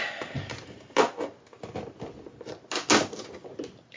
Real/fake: real